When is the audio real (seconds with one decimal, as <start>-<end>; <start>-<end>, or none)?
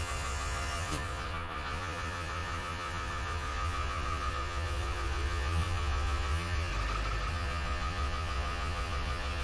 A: 6.7-7.3